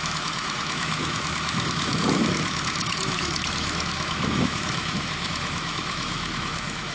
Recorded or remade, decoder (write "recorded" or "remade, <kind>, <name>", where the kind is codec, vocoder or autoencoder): remade, autoencoder, DAC-VAE